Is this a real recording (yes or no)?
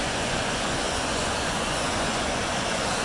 no